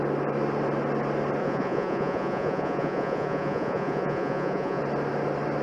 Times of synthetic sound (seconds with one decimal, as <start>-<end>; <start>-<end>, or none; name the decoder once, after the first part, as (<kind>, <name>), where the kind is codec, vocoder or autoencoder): 1.4-4.8 (vocoder, Vocos)